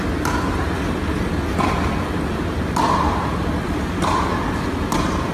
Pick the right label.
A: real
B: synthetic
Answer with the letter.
A